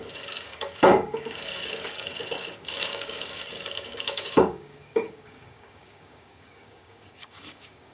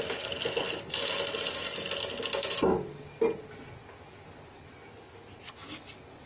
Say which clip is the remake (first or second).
first